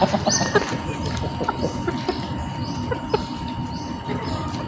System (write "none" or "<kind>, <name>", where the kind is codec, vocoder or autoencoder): none